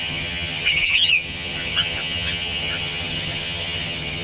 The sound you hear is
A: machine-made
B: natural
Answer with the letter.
A